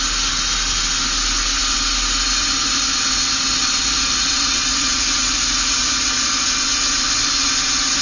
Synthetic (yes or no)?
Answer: no